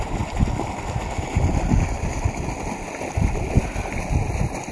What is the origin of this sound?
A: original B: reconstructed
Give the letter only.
A